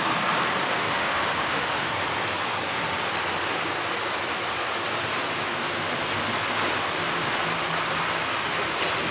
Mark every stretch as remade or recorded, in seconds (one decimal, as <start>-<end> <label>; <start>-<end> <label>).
0.0-0.6 recorded; 0.6-1.9 remade; 1.9-9.1 recorded